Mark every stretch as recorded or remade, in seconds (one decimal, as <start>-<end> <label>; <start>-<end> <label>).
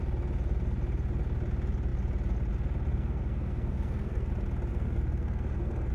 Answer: 0.0-2.9 recorded; 2.9-4.3 remade; 4.3-4.7 recorded; 4.7-5.9 remade